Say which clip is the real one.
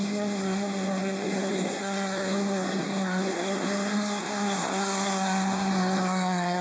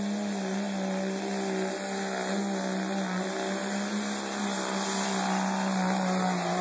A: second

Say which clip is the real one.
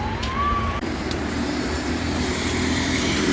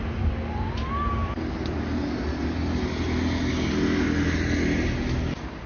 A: second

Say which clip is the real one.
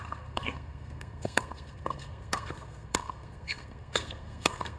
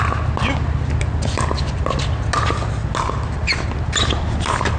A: second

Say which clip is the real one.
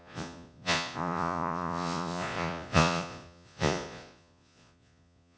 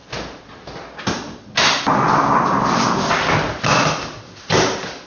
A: second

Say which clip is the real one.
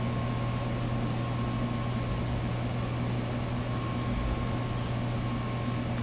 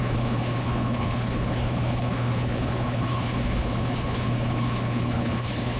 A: first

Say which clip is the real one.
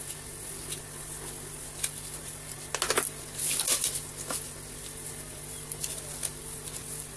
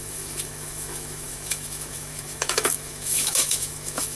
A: first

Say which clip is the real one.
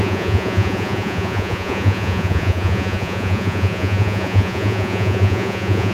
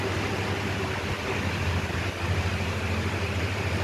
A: second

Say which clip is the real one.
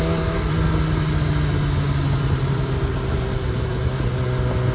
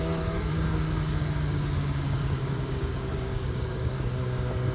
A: first